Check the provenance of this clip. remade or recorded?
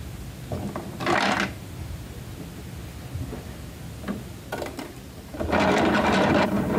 recorded